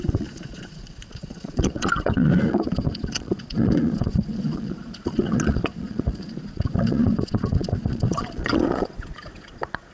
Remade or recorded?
remade